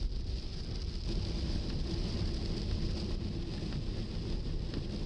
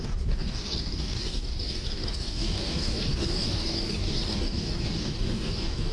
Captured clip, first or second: first